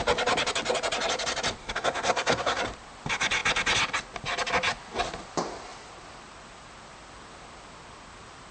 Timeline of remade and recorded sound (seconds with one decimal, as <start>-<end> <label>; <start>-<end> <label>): 0.0-1.6 recorded; 1.6-2.6 remade; 2.6-8.5 recorded